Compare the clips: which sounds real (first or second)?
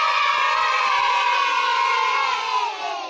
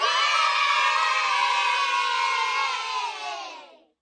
second